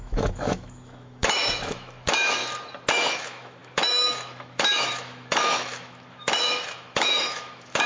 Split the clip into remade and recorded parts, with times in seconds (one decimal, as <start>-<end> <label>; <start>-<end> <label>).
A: 0.0-2.4 remade; 2.4-2.9 recorded; 2.9-7.9 remade